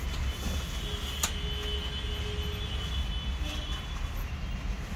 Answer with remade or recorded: recorded